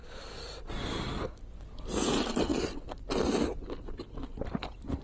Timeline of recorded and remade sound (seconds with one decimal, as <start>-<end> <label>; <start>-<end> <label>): 0.0-5.0 recorded